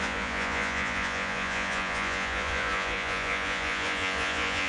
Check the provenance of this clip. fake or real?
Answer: fake